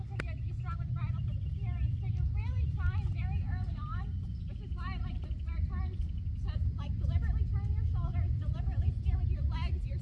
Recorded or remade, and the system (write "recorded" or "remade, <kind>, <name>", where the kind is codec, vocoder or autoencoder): recorded